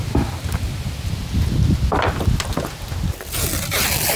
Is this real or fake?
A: real